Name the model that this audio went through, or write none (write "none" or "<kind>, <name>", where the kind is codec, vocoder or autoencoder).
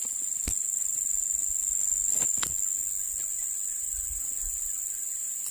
none